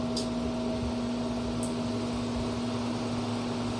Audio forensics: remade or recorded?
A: recorded